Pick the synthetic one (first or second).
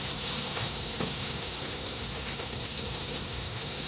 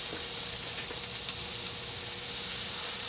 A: first